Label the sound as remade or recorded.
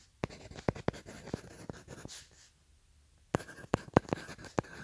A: recorded